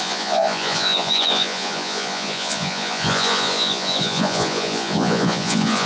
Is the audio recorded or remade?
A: remade